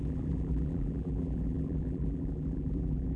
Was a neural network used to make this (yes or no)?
yes